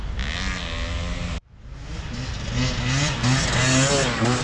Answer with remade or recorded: recorded